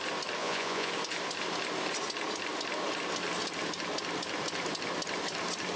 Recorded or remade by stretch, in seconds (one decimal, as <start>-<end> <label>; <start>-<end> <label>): 0.0-0.4 recorded; 0.4-0.9 remade; 0.9-5.8 recorded